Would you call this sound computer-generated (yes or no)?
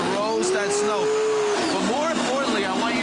no